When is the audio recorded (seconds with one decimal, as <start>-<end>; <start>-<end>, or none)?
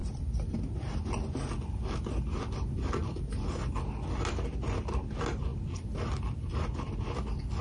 1.0-7.6